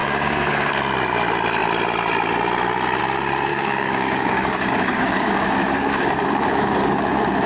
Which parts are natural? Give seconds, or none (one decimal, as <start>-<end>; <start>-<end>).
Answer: 0.8-3.5; 7.0-7.5